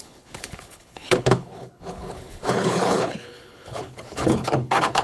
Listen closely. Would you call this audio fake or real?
fake